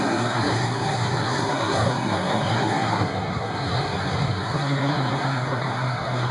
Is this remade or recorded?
remade